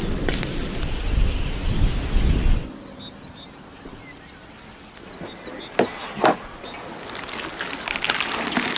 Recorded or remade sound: recorded